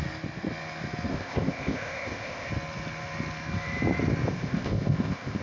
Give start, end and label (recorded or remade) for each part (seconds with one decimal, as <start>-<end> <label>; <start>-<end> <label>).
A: 0.0-1.1 recorded; 1.1-2.5 remade; 2.5-4.3 recorded; 4.3-5.4 remade